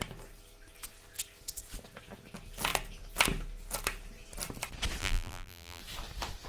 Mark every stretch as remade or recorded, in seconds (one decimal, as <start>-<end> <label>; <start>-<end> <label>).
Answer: 0.0-5.0 recorded; 5.0-5.8 remade; 5.8-6.5 recorded